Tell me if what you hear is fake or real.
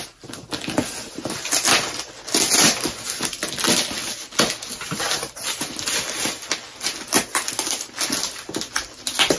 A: real